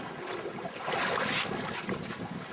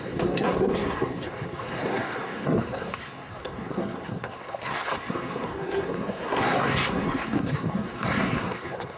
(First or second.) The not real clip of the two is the second